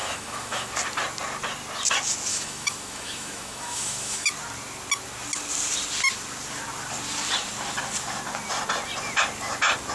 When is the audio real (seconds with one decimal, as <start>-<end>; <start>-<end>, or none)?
0.7-2.3; 4.3-9.9